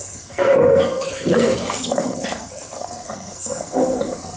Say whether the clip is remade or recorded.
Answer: remade